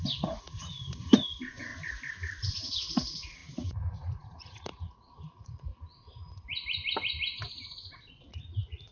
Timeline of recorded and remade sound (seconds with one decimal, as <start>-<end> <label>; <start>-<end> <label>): 0.0-1.7 remade; 1.7-2.5 recorded; 2.5-5.7 remade; 5.7-8.1 recorded; 8.1-8.9 remade